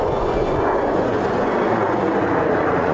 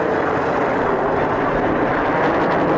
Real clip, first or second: second